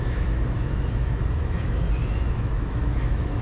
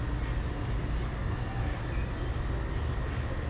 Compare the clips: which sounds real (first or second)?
second